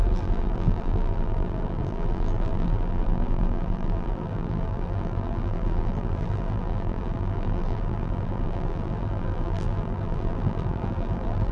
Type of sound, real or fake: fake